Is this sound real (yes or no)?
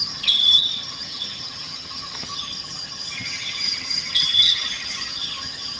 no